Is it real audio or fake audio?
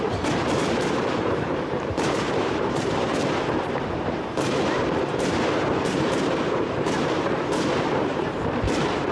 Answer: fake